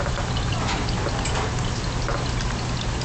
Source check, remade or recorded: recorded